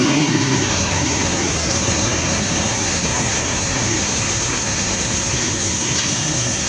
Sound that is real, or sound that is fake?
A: fake